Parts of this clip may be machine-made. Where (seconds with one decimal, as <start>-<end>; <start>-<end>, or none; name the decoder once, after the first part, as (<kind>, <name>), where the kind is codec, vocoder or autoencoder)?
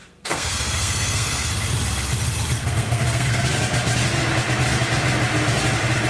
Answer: 0.0-1.5 (codec, SNAC); 2.6-3.4